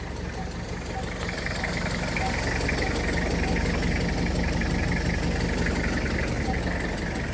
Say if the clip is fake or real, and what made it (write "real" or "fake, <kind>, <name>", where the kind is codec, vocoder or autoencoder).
real